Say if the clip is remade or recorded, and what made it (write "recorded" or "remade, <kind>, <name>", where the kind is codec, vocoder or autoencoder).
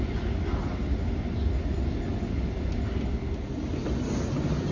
recorded